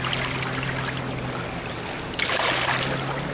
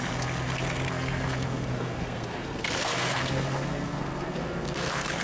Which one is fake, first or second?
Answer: second